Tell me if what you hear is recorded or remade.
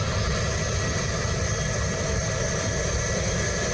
recorded